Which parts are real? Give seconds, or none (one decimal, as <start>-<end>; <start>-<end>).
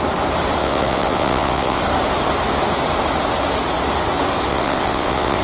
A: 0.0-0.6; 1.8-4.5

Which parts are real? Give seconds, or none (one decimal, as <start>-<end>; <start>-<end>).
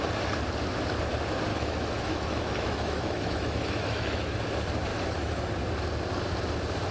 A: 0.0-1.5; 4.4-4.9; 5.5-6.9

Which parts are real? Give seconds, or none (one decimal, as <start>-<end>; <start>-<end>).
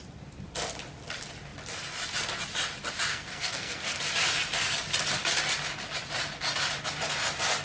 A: 0.0-3.1; 4.0-7.6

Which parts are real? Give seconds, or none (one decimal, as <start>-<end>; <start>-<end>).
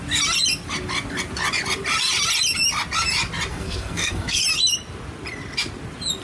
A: 0.0-3.5; 4.4-6.2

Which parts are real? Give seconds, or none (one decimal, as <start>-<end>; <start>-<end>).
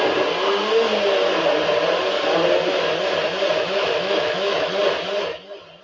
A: 0.0-3.6; 4.8-5.8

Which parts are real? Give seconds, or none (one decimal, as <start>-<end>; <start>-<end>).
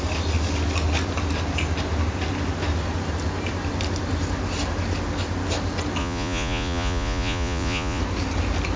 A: 0.0-6.0; 8.0-8.8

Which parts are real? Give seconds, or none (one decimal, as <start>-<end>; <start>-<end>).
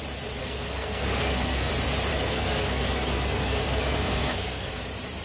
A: 0.0-0.4; 1.7-2.1; 4.8-5.2